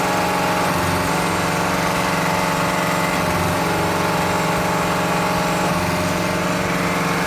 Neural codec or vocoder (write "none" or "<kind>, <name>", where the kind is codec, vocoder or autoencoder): none